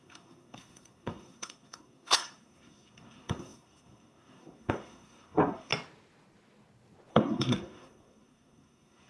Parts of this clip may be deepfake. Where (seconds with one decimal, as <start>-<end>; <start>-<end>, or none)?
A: 0.0-5.7; 7.1-9.1